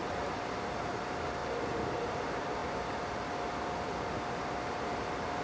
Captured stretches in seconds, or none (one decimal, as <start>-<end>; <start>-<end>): 0.0-0.9; 1.4-1.9; 2.6-4.4

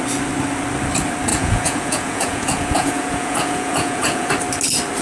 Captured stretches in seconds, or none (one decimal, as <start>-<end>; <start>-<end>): 0.0-1.3; 4.3-5.0

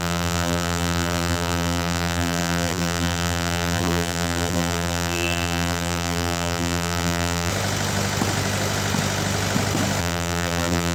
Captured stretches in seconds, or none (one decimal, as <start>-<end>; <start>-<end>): 7.5-10.0

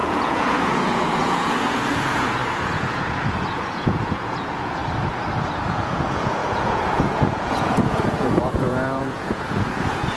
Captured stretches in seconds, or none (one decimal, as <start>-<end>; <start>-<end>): 4.8-5.7

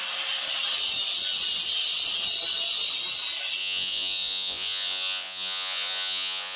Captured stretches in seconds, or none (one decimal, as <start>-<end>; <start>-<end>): 0.0-3.6

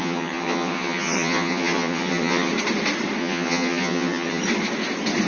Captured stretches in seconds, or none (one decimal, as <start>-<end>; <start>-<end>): 2.5-3.2; 4.4-5.3